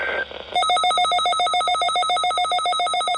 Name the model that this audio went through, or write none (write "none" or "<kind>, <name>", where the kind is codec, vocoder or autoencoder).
vocoder, BigVGAN v2